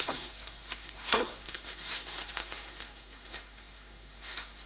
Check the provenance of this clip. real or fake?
fake